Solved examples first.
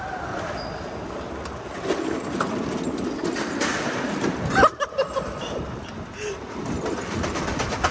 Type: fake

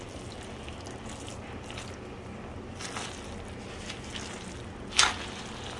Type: real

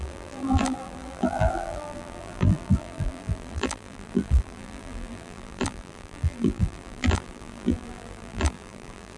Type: fake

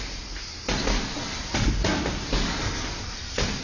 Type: real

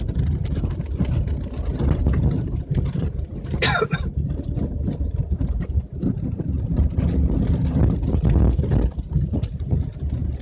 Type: real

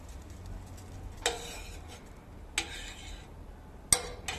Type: real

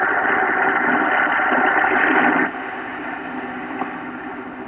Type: real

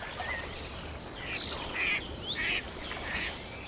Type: real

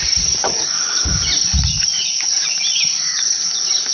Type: fake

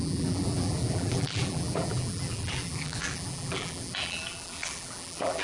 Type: fake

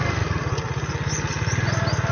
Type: real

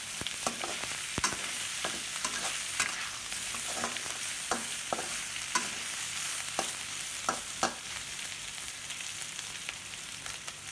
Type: fake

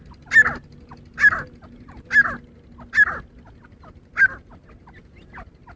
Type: real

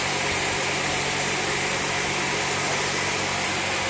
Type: real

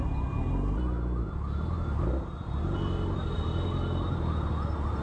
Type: real